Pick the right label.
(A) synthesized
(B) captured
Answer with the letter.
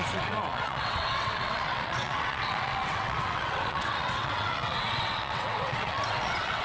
A